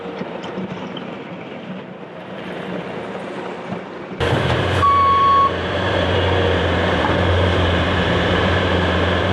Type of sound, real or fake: fake